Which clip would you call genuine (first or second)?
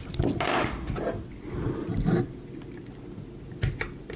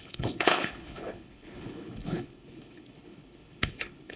first